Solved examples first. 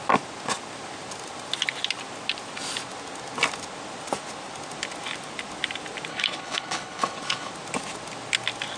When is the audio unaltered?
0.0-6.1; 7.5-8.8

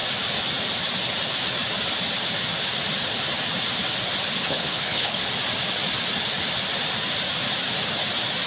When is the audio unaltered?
0.0-4.4; 5.2-8.5

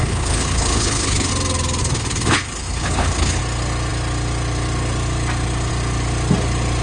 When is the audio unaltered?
1.3-1.8; 3.4-6.8

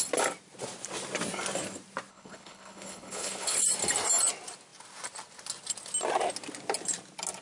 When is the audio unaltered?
0.0-2.1; 3.6-7.4

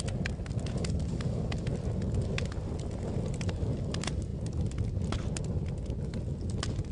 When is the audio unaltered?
0.0-6.9

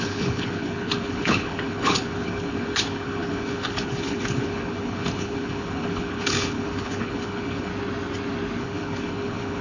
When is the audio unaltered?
7.7-8.6

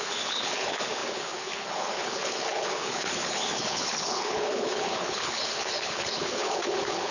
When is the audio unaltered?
none

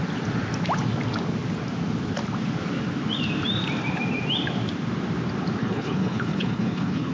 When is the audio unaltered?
0.0-5.6